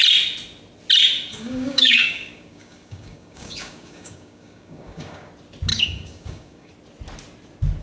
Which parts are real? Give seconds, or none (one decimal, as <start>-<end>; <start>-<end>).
0.0-1.3; 5.3-5.7; 6.7-7.8